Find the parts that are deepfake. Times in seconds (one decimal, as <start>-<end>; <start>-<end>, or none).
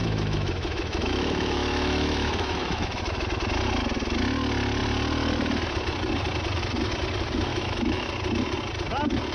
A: 0.0-3.0; 7.5-8.1